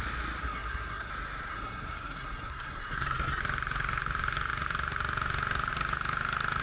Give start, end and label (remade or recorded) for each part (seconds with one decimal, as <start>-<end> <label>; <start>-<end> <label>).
0.0-0.4 recorded; 0.4-1.1 remade; 1.1-1.5 recorded; 1.5-3.4 remade; 3.4-6.6 recorded